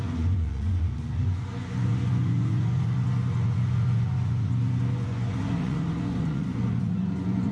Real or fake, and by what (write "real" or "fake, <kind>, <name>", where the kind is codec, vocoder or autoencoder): fake, vocoder, Vocos